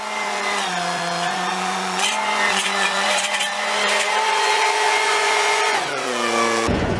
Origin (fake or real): fake